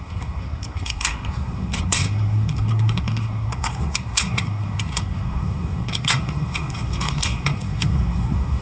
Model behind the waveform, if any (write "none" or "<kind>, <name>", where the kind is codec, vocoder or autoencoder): codec, SNAC